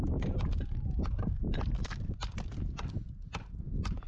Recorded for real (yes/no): yes